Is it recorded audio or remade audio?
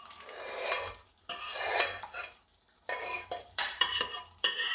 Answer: remade